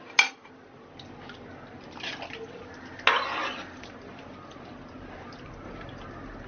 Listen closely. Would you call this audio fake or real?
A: real